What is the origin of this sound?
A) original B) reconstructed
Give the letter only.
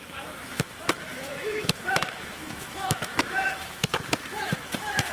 B